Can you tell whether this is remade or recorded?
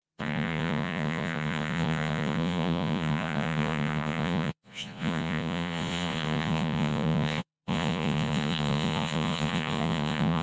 remade